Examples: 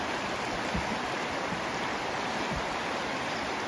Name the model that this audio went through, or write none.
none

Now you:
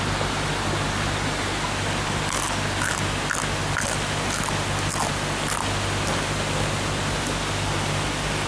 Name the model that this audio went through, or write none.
none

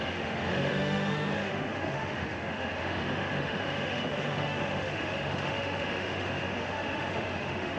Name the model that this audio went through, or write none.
autoencoder, DAC-VAE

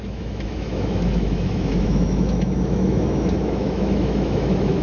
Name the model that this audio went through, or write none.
autoencoder, DAC-VAE